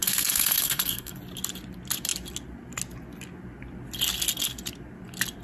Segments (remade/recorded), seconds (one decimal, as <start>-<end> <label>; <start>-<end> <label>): 0.0-1.2 remade; 1.2-5.4 recorded